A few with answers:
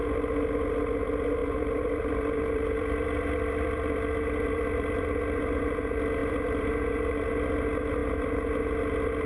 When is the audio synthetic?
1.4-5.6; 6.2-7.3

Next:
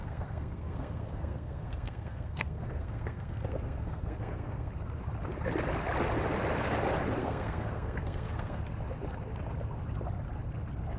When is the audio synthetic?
0.0-4.7; 7.2-8.6

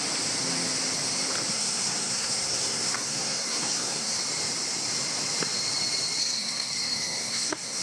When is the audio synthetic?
1.5-4.2; 6.2-7.8

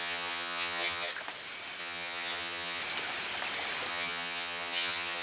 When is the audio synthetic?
0.0-1.1; 1.8-2.8; 3.9-5.2

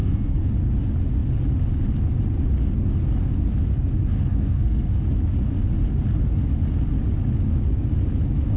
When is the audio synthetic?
0.0-0.5; 4.3-5.0

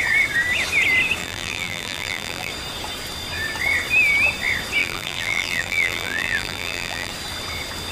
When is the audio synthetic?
1.2-2.5; 4.8-7.1

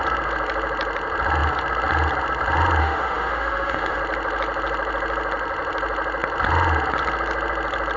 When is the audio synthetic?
2.8-4.0

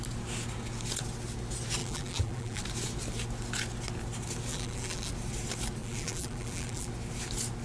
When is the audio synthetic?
1.8-2.6; 4.5-5.1; 5.8-6.9